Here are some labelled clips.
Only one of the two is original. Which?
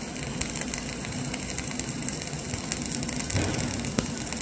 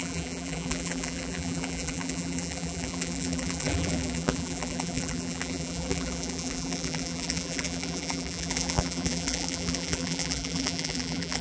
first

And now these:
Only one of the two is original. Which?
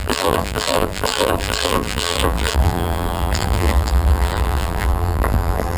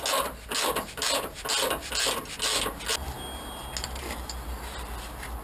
second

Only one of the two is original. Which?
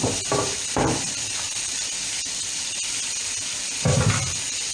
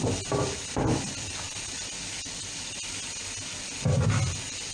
second